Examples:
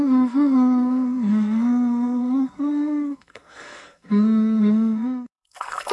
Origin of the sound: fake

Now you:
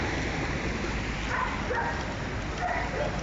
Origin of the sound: real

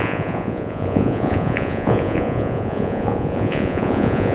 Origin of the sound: fake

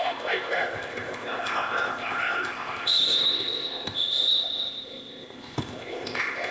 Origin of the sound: fake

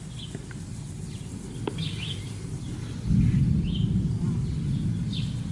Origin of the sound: real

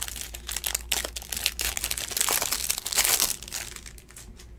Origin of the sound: real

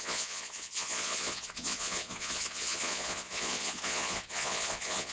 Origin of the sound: fake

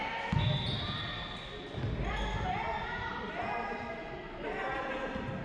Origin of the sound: real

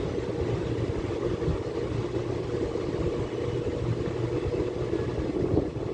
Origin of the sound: real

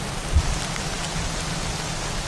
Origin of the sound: fake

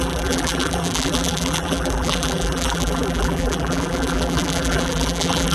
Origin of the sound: fake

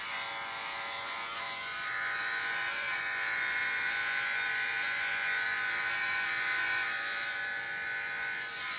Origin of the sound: fake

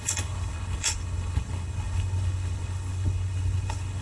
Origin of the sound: fake